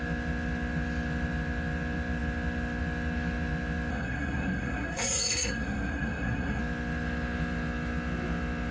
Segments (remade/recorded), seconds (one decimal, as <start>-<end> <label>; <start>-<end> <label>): 0.0-3.9 recorded; 3.9-6.6 remade; 6.6-8.7 recorded